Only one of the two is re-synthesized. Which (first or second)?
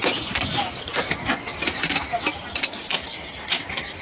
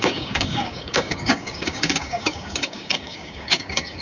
second